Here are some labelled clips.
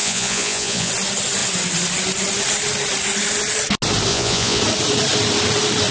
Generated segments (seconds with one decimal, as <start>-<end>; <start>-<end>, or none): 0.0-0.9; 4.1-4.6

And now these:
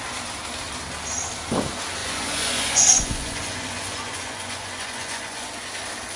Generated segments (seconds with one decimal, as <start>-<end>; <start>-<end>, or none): 2.0-5.7

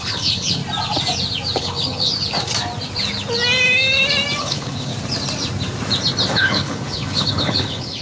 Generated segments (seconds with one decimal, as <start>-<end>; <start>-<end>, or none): 0.0-0.6; 1.6-2.1; 4.4-4.9; 6.3-8.0

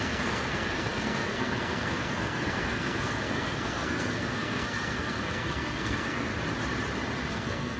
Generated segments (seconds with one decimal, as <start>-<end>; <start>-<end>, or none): 0.0-6.3; 7.3-7.8

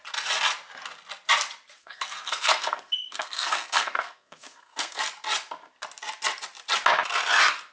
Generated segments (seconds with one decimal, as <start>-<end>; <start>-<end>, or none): 1.8-5.0

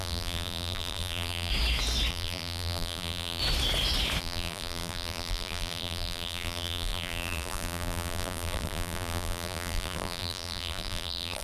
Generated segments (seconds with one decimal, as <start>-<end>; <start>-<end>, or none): 0.0-1.5; 2.1-3.4; 4.2-11.4